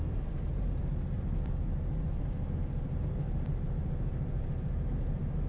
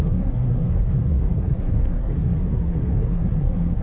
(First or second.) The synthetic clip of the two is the second